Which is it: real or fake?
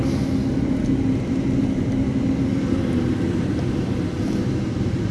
real